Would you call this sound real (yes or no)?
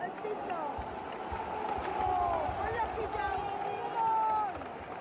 yes